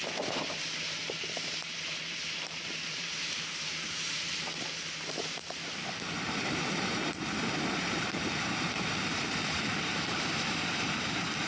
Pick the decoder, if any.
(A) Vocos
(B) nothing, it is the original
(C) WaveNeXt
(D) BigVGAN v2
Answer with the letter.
D